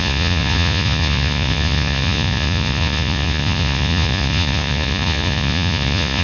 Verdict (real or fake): fake